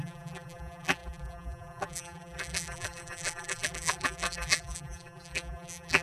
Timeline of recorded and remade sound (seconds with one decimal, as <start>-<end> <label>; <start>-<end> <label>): 0.0-6.0 remade